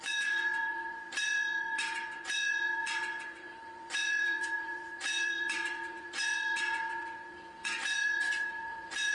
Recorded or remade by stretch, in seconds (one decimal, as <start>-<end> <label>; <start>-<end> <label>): 0.0-9.1 remade